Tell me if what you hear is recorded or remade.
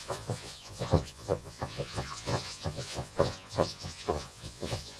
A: remade